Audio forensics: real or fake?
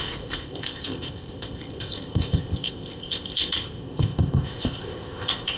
fake